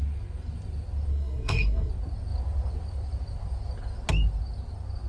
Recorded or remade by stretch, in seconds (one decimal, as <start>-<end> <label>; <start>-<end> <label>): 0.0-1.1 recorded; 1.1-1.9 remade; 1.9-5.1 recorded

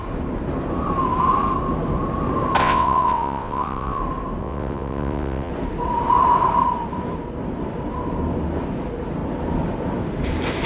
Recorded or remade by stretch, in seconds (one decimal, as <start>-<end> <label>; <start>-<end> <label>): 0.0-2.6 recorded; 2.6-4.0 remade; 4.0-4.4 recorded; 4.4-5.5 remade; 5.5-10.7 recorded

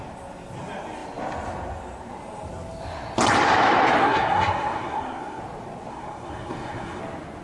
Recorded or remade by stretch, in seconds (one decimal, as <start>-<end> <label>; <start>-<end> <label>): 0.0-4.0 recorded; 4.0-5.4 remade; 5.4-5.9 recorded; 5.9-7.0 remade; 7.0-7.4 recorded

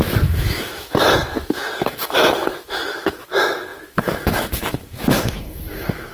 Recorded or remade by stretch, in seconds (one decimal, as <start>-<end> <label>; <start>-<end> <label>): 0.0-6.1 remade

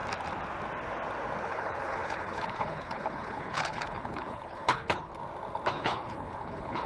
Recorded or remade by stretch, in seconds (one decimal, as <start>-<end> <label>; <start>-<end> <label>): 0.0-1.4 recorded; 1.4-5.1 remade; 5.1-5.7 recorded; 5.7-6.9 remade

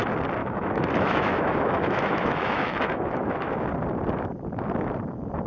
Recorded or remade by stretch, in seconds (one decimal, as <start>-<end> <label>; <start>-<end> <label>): 0.0-0.4 recorded; 0.4-3.7 remade; 3.7-5.5 recorded

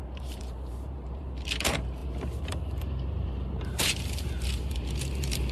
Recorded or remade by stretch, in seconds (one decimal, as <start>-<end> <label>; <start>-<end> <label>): 0.0-5.5 remade

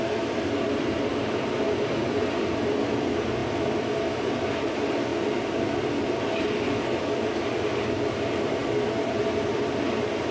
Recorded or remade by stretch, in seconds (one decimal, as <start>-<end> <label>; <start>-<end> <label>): 0.0-8.6 remade; 8.6-9.4 recorded; 9.4-10.3 remade